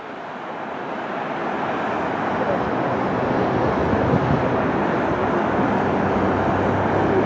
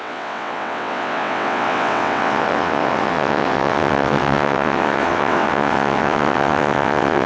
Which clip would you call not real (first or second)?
second